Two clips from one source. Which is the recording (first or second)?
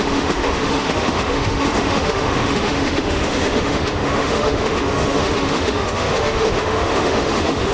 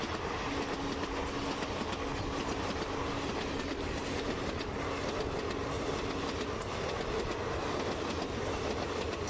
second